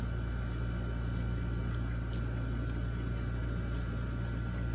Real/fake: real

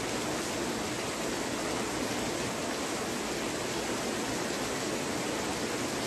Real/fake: real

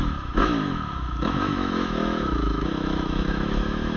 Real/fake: fake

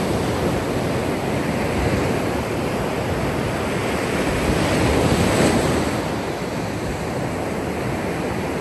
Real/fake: real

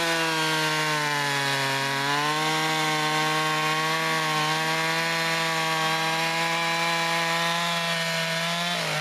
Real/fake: real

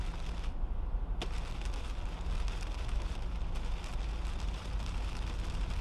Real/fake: real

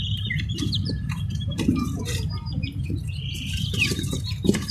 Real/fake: fake